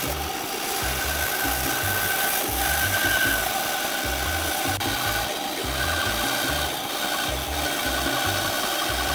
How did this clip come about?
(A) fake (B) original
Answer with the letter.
B